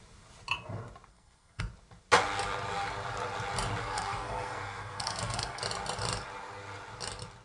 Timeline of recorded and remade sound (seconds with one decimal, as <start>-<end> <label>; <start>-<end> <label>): 0.0-1.1 recorded; 1.1-1.6 remade; 1.6-3.8 recorded; 3.8-5.6 remade; 5.6-7.4 recorded